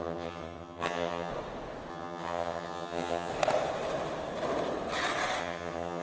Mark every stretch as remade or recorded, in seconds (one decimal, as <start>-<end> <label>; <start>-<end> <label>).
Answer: 0.0-1.3 remade; 1.3-1.9 recorded; 1.9-3.3 remade; 3.3-5.4 recorded; 5.4-6.0 remade